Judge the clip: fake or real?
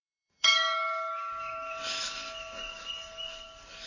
fake